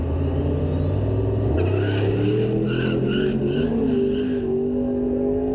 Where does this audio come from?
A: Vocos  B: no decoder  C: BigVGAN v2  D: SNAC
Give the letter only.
B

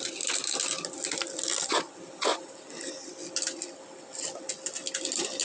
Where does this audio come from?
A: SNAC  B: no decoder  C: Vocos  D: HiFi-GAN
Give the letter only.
B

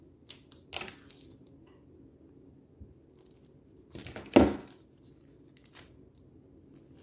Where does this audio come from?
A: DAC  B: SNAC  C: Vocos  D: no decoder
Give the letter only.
D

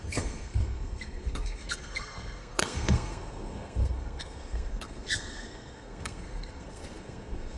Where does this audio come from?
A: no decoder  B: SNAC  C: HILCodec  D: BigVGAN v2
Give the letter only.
B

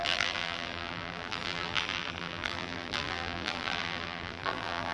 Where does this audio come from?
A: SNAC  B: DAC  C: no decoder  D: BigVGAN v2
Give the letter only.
D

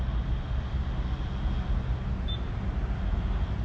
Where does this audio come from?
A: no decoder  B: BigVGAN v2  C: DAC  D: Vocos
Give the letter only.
A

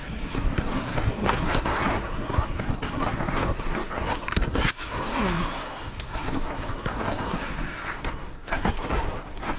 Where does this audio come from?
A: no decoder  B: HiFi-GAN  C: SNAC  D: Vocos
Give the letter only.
C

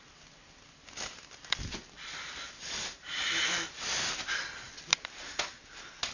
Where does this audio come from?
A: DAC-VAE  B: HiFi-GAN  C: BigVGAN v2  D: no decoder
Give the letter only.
D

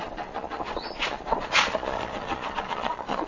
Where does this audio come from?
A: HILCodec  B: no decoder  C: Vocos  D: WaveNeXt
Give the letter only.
C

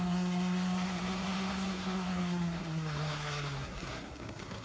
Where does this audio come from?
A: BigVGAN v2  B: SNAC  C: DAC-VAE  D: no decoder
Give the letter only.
B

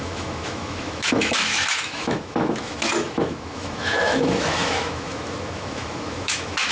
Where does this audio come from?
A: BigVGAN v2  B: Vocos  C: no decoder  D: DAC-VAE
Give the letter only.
D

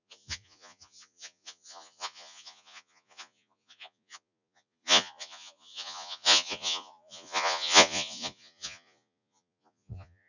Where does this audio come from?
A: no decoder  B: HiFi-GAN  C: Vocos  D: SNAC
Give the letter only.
C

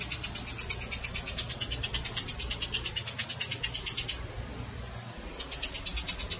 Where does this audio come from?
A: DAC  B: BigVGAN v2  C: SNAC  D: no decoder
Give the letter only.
D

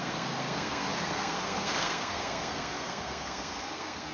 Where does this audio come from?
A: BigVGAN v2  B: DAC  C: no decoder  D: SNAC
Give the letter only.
D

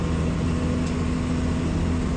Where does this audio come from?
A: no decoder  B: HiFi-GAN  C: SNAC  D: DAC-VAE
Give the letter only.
A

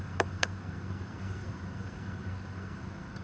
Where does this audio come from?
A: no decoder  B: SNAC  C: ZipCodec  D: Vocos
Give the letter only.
B